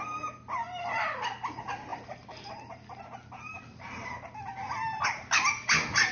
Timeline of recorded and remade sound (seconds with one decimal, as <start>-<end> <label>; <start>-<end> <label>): 0.0-6.1 recorded